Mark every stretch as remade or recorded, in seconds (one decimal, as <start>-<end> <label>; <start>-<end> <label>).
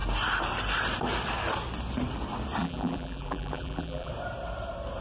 0.0-2.6 recorded; 2.6-4.1 remade; 4.1-5.0 recorded